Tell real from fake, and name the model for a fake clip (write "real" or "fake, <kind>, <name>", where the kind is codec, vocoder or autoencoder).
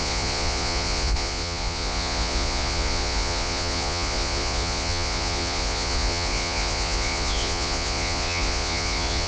fake, vocoder, Vocos